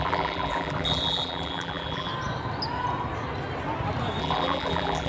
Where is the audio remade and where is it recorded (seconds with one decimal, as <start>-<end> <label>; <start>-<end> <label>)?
0.0-2.1 remade; 2.1-4.2 recorded; 4.2-5.1 remade